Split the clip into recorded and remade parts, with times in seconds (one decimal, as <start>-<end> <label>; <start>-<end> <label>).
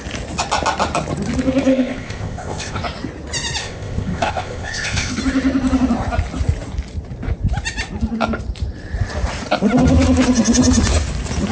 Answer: 0.0-1.7 recorded; 1.7-2.8 remade; 2.8-3.6 recorded; 3.6-5.2 remade; 5.2-11.5 recorded